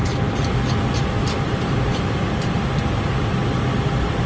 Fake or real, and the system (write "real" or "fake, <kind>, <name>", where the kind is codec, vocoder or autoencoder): real